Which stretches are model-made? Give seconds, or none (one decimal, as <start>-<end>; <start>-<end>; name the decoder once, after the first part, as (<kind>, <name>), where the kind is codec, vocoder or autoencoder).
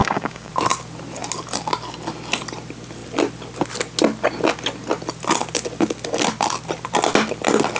0.0-0.5 (codec, DAC)